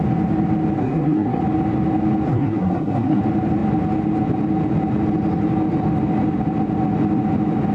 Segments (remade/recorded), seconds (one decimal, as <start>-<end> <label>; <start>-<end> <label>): 0.0-0.8 recorded; 0.8-1.4 remade; 1.4-2.3 recorded; 2.3-3.2 remade; 3.2-7.7 recorded